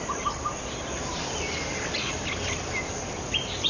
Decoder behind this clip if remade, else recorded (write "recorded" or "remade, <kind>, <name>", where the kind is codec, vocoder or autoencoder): recorded